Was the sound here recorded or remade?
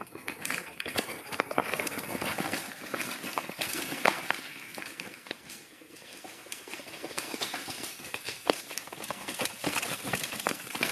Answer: remade